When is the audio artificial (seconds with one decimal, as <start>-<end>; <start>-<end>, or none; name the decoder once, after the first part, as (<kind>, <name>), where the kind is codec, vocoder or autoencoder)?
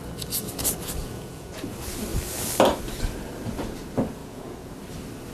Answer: 1.0-1.6 (vocoder, Vocos); 4.2-4.7